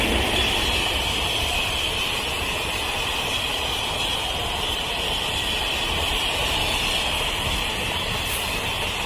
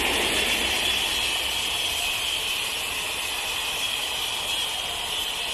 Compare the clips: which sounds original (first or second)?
second